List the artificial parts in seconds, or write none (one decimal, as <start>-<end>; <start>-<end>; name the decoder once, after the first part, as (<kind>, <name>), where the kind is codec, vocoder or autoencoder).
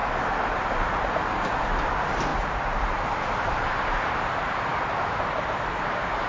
0.0-2.3 (vocoder, BigVGAN v2); 4.0-6.3